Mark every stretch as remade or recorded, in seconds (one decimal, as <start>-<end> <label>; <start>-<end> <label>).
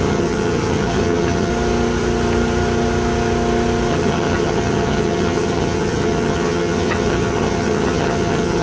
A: 0.0-1.5 remade; 1.5-3.9 recorded; 3.9-8.6 remade